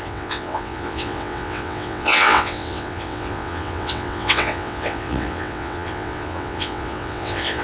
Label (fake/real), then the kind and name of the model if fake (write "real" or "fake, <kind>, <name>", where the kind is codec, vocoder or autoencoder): fake, vocoder, WaveNeXt